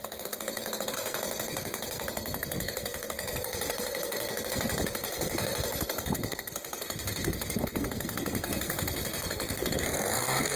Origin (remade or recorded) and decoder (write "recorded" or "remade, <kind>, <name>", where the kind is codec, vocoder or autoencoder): remade, codec, SNAC